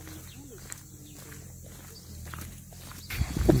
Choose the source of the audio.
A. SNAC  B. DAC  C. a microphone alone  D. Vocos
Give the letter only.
C